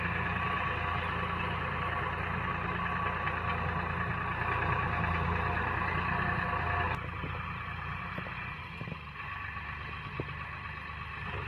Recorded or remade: recorded